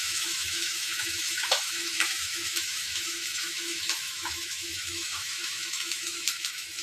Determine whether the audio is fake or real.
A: fake